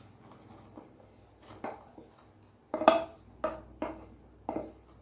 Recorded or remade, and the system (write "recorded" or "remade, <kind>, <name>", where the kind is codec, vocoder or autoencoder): recorded